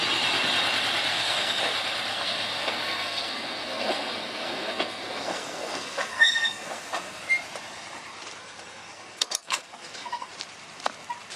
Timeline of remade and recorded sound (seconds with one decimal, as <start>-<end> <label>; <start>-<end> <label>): 0.0-1.1 recorded; 1.1-1.6 remade; 1.6-2.1 recorded; 2.1-7.2 remade; 7.2-8.4 recorded; 8.4-10.3 remade; 10.3-11.4 recorded